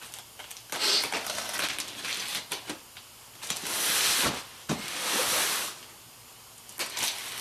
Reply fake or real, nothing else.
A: real